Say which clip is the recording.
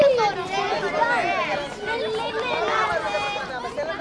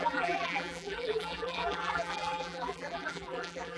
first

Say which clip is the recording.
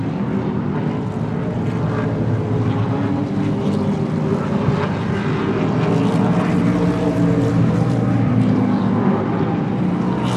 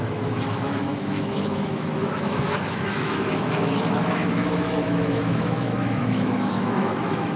first